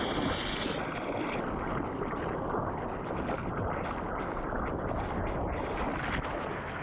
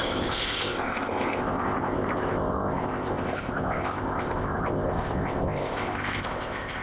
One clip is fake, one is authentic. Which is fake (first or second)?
second